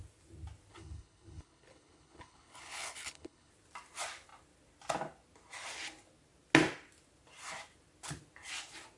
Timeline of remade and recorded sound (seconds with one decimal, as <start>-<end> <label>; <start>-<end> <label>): 0.0-0.7 recorded; 0.7-3.5 remade; 3.5-9.0 recorded